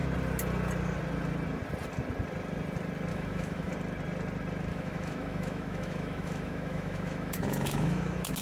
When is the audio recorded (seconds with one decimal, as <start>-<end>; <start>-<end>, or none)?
0.0-3.1; 3.7-4.7